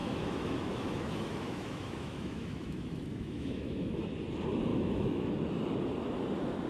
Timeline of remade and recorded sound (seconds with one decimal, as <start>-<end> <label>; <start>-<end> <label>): 0.0-4.0 remade; 4.0-4.7 recorded; 4.7-5.3 remade; 5.3-6.7 recorded